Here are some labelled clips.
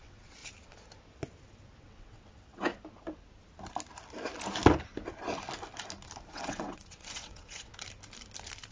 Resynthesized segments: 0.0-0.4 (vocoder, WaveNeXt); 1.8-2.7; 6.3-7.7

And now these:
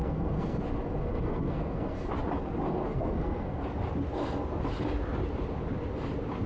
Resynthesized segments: 0.0-0.6 (codec, SNAC); 1.0-2.1; 2.9-3.6

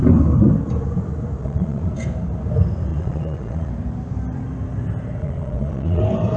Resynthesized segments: 1.4-1.9 (vocoder, Vocos); 2.9-3.7; 5.2-6.0

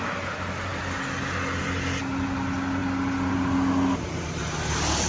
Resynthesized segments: none

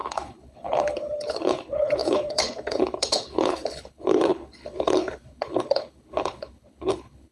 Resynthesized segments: 0.0-7.3 (codec, HILCodec)